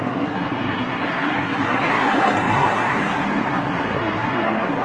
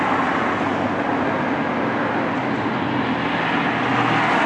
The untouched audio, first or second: second